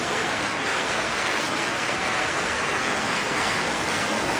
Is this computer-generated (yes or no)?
yes